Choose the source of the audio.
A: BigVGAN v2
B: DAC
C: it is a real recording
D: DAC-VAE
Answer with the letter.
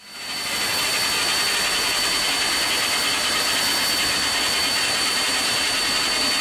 C